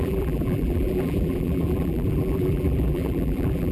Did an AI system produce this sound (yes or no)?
yes